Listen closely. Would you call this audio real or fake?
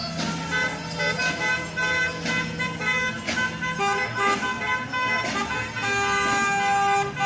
real